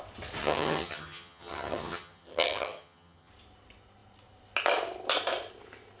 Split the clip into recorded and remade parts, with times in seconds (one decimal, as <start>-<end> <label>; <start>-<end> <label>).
0.0-0.4 recorded; 0.4-3.3 remade; 3.3-6.0 recorded